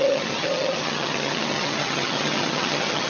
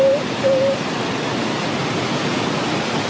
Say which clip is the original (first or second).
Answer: second